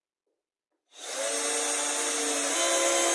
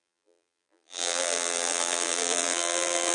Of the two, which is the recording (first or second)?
first